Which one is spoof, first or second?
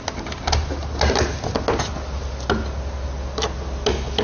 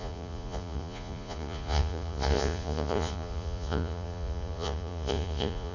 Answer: second